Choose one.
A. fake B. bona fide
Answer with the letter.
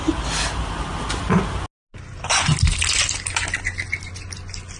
B